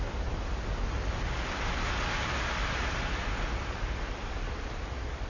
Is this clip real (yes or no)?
yes